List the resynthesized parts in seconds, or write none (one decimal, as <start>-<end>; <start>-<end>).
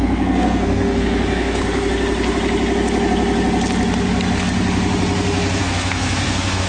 0.0-1.6; 5.6-6.7